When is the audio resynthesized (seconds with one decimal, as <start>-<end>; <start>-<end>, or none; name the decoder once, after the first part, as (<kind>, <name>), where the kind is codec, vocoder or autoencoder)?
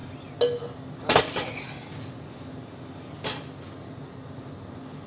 1.2-1.8 (vocoder, BigVGAN v2)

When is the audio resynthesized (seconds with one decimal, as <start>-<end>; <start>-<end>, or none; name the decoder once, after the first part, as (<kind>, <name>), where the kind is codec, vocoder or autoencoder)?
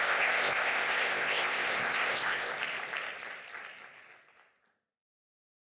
0.0-2.5 (codec, ZipCodec)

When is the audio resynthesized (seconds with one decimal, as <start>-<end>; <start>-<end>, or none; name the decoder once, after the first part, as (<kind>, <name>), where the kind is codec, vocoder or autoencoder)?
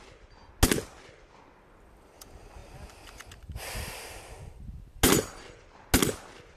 none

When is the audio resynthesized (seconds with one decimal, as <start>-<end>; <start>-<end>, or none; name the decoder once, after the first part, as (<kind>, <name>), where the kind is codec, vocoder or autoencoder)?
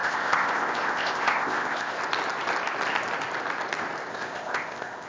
0.0-2.0 (codec, ZipCodec); 4.1-5.1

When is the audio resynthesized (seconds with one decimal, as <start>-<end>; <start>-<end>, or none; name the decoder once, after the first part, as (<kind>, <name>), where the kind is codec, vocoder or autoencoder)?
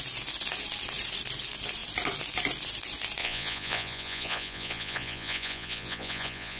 3.2-6.6 (vocoder, Vocos)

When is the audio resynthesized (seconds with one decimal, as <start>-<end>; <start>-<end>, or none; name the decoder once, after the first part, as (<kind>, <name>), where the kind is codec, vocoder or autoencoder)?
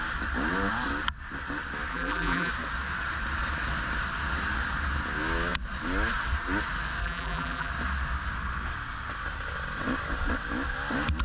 1.9-2.5 (vocoder, BigVGAN v2); 7.0-7.7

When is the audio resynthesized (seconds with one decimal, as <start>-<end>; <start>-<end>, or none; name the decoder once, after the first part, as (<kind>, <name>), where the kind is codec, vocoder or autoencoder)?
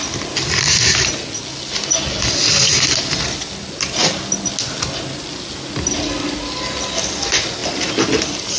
none